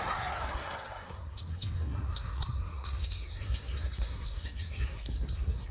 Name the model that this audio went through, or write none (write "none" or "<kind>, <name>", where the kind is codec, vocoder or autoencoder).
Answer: codec, SNAC